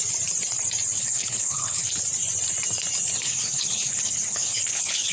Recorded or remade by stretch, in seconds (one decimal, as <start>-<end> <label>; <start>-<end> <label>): 0.0-1.0 recorded; 1.0-1.9 remade; 1.9-3.2 recorded; 3.2-5.1 remade